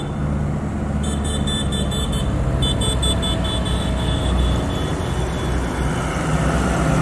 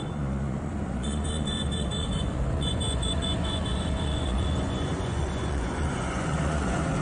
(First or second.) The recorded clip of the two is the first